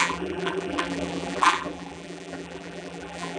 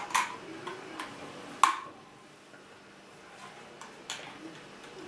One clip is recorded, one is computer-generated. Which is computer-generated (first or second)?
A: first